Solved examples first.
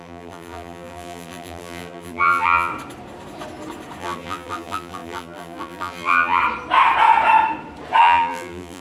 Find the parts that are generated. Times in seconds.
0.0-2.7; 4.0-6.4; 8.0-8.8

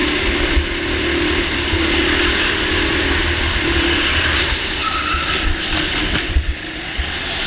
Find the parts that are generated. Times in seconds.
none